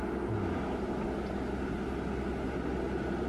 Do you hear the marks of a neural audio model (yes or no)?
no